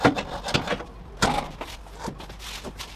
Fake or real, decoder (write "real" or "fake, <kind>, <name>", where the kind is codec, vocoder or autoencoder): fake, vocoder, BigVGAN v2